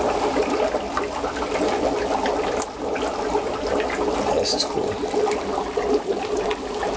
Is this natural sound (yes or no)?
yes